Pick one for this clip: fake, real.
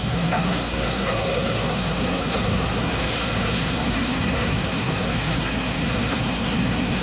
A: fake